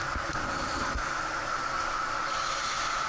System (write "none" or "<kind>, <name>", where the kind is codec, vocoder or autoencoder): none